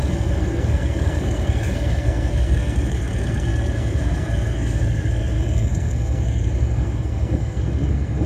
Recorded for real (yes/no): no